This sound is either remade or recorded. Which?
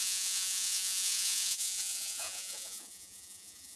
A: remade